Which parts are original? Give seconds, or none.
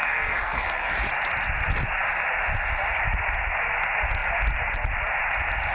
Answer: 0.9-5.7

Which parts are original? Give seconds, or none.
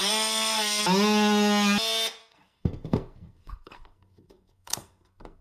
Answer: 0.8-2.2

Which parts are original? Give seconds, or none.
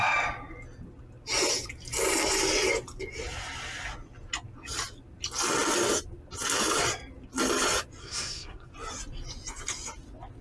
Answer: 0.0-8.0; 8.7-10.4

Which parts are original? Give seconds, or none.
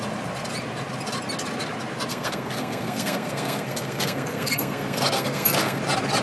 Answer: 0.0-2.1; 5.8-6.2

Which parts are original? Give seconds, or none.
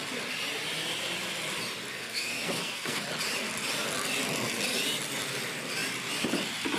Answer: 0.0-1.9; 3.0-6.8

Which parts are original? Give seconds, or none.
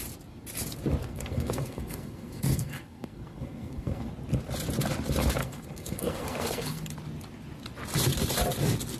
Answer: 0.0-1.0; 4.1-5.4; 6.9-9.0